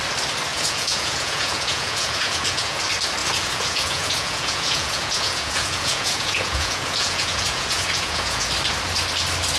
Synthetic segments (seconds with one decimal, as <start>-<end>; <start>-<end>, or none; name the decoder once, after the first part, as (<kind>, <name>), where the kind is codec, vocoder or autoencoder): 0.5-2.8 (vocoder, Vocos); 3.2-8.5